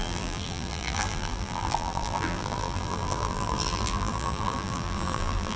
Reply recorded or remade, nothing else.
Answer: remade